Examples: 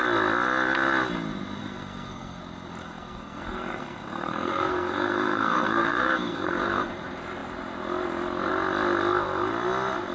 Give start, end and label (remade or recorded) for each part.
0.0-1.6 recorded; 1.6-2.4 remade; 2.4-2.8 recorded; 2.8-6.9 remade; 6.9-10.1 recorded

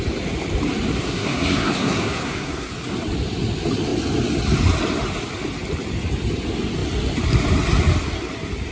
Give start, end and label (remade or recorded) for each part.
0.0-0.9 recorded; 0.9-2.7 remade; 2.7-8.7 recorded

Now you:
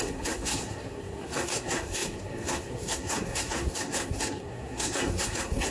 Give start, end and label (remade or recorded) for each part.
0.0-5.7 remade

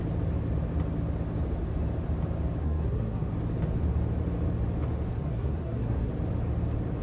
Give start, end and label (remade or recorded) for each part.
0.0-2.6 recorded; 2.6-3.3 remade; 3.3-5.1 recorded; 5.1-6.1 remade; 6.1-7.0 recorded

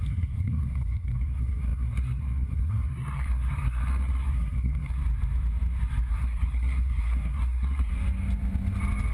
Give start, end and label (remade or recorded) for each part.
0.0-5.0 remade; 5.0-6.1 recorded; 6.1-7.9 remade; 7.9-9.1 recorded

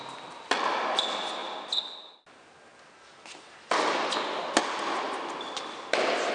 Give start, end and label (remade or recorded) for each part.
0.0-6.3 recorded